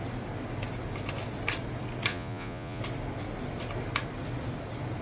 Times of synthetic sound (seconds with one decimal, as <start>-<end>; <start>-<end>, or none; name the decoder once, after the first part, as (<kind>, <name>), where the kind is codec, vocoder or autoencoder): 2.1-2.8 (vocoder, Vocos)